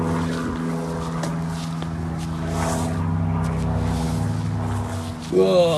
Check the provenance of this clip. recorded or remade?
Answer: recorded